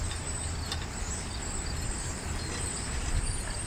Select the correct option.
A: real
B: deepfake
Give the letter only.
A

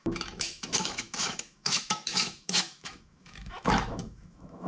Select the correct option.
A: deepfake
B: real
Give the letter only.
A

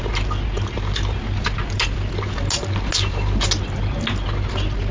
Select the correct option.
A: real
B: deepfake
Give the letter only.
A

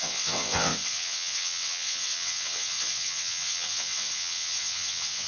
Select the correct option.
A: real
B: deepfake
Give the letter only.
B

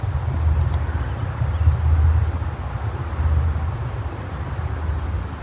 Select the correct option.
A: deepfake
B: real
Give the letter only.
B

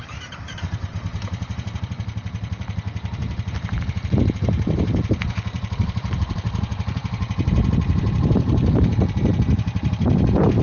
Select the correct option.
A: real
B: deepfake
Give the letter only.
B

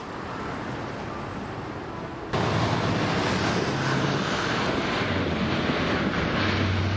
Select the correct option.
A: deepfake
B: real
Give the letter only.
B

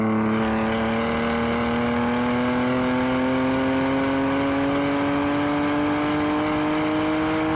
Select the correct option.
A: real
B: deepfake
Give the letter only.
A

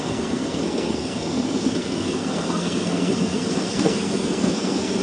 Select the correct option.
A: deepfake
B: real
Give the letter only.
A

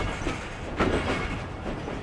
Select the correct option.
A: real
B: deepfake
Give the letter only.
A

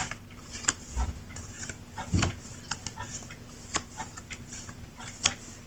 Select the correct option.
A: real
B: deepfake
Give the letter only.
A